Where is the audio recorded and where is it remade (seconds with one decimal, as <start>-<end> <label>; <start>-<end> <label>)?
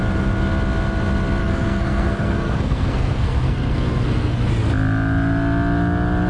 0.0-1.4 recorded; 1.4-4.5 remade; 4.5-6.3 recorded